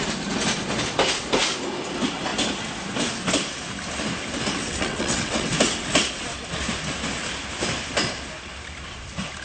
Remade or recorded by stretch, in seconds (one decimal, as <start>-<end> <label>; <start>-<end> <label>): 0.0-4.6 recorded; 4.6-5.5 remade; 5.5-9.4 recorded